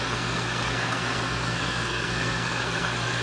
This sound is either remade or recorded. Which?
remade